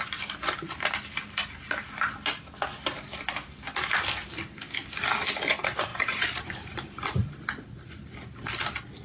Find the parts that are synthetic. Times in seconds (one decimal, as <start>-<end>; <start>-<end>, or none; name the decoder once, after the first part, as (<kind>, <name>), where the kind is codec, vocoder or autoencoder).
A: 5.9-7.3 (vocoder, BigVGAN v2)